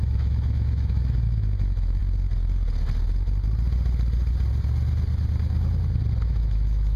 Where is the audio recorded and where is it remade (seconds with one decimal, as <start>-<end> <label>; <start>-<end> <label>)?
0.0-2.0 remade; 2.0-6.2 recorded; 6.2-7.0 remade